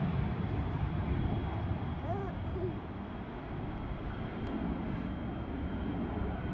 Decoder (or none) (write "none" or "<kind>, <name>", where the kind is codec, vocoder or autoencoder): none